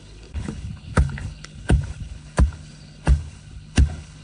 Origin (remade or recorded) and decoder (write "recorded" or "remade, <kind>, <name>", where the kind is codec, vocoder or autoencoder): remade, codec, HILCodec